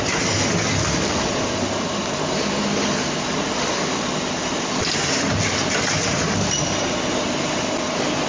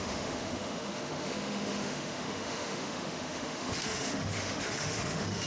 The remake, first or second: second